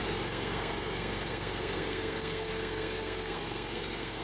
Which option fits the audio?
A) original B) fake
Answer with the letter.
B